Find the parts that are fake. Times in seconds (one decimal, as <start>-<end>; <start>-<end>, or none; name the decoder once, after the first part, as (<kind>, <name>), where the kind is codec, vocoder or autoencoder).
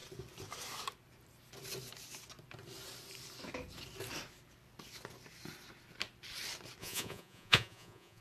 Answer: 6.8-8.2 (vocoder, Vocos)